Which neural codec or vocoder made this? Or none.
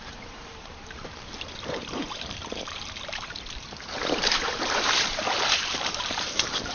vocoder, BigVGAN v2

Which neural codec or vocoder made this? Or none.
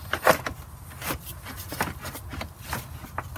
none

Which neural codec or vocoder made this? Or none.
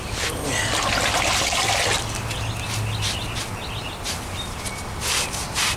none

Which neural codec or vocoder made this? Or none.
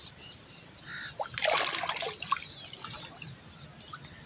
none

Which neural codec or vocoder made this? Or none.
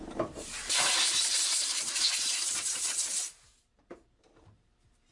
vocoder, BigVGAN v2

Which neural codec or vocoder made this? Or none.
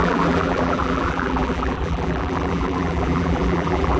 vocoder, BigVGAN v2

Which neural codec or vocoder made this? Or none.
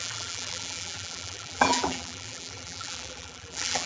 vocoder, BigVGAN v2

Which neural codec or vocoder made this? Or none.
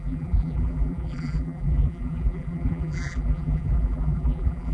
vocoder, BigVGAN v2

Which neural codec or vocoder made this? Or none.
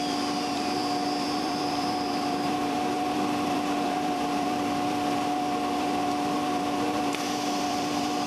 vocoder, BigVGAN v2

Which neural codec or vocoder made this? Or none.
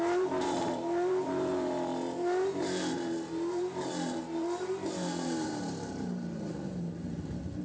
vocoder, BigVGAN v2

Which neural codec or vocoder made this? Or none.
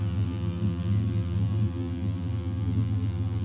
vocoder, BigVGAN v2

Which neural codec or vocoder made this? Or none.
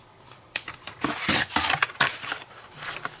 vocoder, BigVGAN v2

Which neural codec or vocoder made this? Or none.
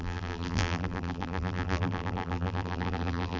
vocoder, BigVGAN v2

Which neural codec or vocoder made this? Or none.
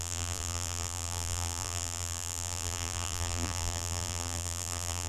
vocoder, BigVGAN v2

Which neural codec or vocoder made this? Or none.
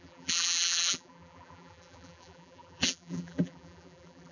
vocoder, BigVGAN v2